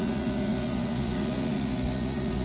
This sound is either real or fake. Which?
fake